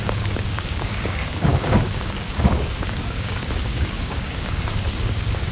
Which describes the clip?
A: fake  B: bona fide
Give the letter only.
A